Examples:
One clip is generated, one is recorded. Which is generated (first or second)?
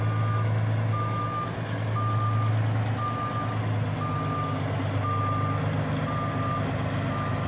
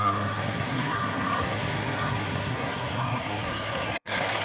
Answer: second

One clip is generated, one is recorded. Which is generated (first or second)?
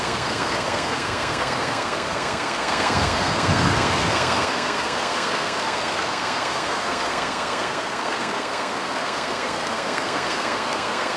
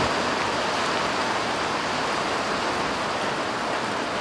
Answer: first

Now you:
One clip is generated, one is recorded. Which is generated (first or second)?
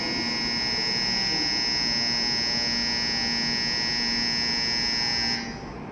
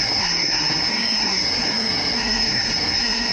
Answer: second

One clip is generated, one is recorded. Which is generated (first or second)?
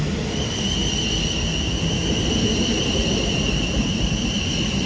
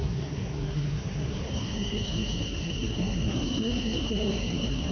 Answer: second